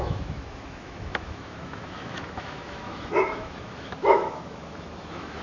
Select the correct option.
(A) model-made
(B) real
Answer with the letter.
A